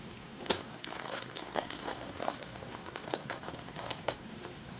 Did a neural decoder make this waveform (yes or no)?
yes